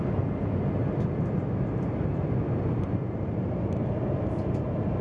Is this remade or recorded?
recorded